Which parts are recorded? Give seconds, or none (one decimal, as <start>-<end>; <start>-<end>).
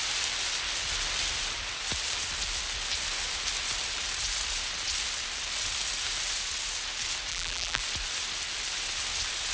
0.0-7.3; 7.8-9.5